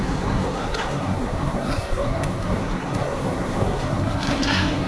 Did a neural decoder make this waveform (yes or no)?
yes